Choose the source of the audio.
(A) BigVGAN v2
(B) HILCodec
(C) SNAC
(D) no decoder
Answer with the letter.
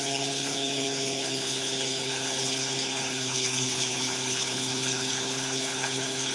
B